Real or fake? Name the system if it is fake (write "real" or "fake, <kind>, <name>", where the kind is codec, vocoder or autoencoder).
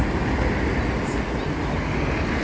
real